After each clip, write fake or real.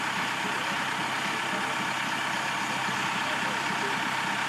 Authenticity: real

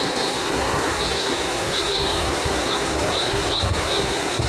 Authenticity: fake